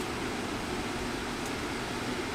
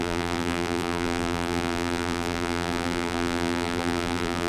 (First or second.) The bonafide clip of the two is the first